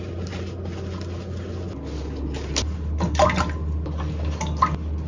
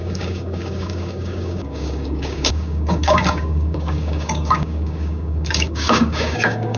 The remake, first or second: second